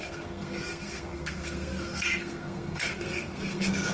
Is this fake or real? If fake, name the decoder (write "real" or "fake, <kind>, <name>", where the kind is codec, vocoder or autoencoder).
fake, codec, SNAC